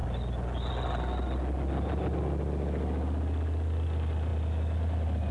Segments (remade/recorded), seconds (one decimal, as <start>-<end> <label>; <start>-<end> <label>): 0.0-5.3 recorded

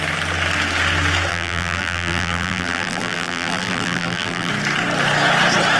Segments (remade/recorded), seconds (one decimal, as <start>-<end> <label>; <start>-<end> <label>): 0.0-1.3 recorded; 1.3-4.5 remade; 4.5-5.8 recorded